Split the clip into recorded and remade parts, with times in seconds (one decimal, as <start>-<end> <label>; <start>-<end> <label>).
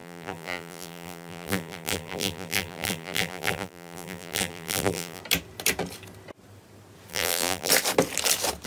0.0-5.2 remade; 5.2-7.1 recorded; 7.1-7.7 remade; 7.7-8.7 recorded